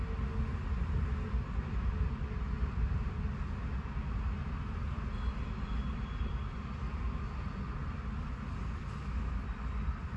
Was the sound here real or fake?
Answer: real